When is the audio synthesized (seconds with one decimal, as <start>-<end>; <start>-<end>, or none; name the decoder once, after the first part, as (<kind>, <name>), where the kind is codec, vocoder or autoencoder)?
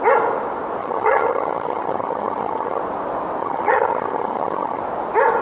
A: 0.8-2.8 (vocoder, HiFi-GAN); 3.4-4.8